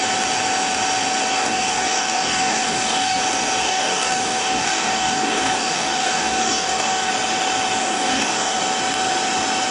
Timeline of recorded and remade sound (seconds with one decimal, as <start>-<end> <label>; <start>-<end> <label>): 0.0-1.3 recorded; 1.3-3.2 remade; 3.2-3.6 recorded; 3.6-7.1 remade; 7.1-7.8 recorded; 7.8-8.6 remade; 8.6-9.7 recorded